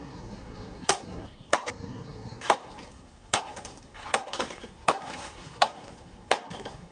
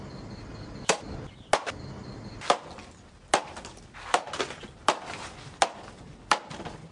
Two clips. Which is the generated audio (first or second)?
first